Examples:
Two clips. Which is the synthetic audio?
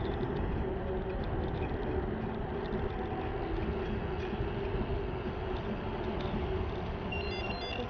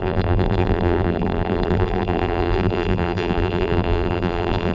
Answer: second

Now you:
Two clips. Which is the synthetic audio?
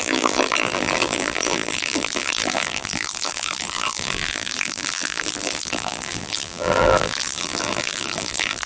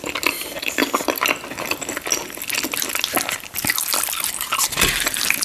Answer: first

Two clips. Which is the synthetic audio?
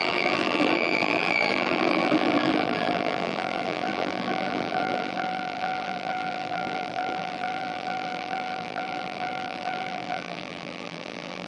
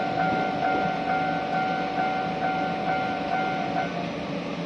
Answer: first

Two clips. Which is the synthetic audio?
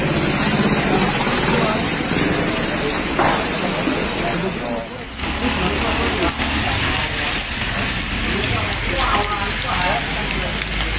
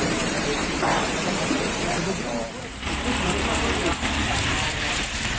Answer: second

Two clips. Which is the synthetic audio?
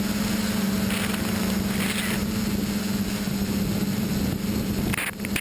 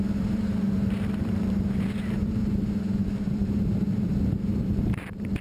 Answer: second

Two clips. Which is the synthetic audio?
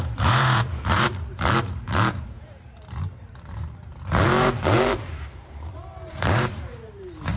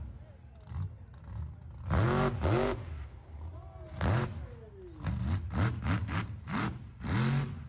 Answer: first